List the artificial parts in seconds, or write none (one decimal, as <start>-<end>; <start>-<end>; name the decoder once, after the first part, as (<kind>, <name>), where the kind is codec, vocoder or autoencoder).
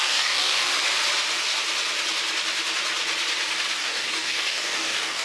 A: 0.0-0.7 (codec, DAC); 3.8-5.2